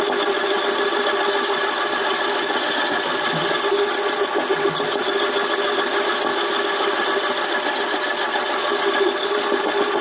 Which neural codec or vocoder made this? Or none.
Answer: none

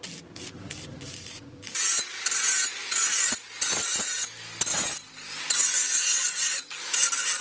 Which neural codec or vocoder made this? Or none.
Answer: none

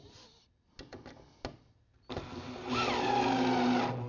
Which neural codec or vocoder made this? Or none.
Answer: none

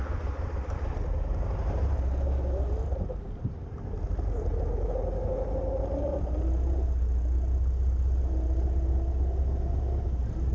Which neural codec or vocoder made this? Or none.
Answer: none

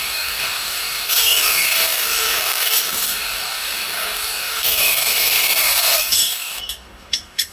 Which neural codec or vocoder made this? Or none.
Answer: codec, DAC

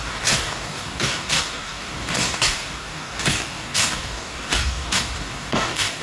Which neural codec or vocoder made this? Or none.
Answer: codec, DAC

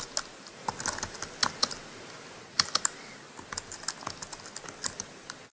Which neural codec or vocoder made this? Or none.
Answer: none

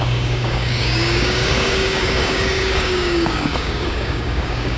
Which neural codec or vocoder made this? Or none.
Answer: codec, DAC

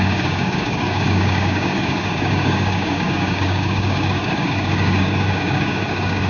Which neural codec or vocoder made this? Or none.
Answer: codec, DAC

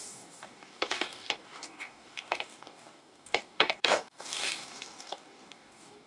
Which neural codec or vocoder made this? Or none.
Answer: codec, DAC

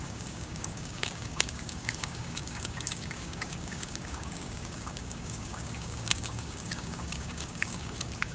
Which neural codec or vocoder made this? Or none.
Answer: codec, DAC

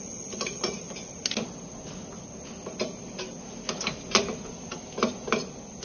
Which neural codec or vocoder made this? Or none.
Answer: none